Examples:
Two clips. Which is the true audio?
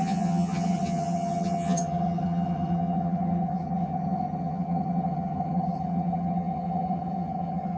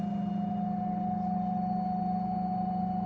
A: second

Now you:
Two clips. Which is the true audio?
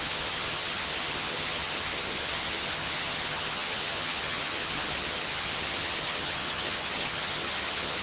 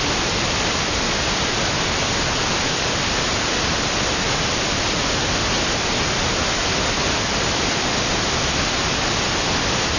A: second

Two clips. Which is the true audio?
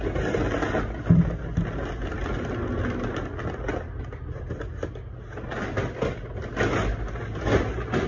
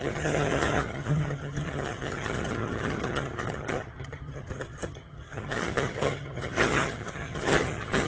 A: first